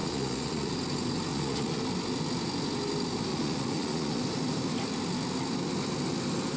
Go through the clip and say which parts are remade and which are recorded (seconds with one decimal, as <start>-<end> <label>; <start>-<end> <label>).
0.0-0.7 remade; 0.7-1.3 recorded; 1.3-1.8 remade; 1.8-3.3 recorded; 3.3-4.2 remade; 4.2-6.6 recorded